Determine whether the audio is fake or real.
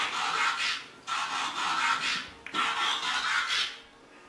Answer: real